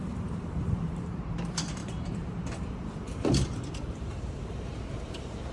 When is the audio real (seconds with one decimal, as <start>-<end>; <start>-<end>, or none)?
none

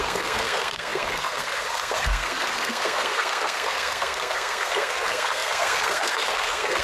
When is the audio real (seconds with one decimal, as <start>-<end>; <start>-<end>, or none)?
none

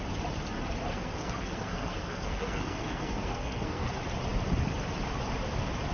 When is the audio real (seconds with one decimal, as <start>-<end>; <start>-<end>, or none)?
0.0-0.9; 3.9-5.9

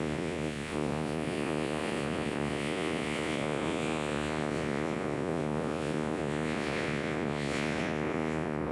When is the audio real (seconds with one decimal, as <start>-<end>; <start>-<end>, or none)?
none

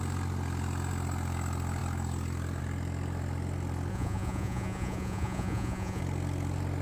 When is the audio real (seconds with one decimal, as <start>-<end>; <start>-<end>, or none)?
0.0-3.9; 6.0-6.8